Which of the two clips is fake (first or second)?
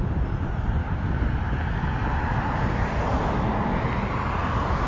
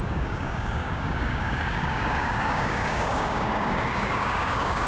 second